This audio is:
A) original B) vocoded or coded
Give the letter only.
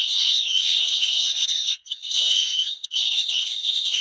B